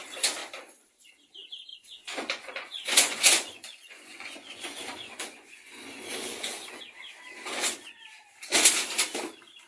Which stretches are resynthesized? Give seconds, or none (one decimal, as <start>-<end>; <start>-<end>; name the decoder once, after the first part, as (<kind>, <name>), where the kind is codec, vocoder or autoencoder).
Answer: 1.7-6.8 (vocoder, Vocos)